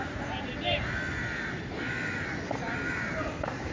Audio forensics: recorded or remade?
recorded